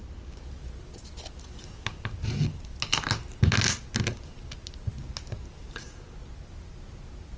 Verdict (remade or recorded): recorded